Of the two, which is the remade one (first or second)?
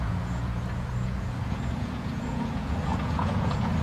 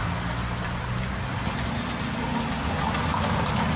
first